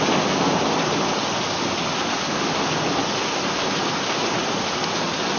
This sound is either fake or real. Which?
real